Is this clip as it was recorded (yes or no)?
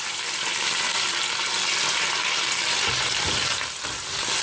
yes